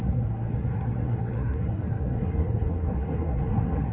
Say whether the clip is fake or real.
fake